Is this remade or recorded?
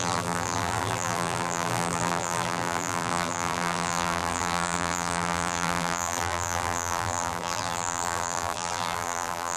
remade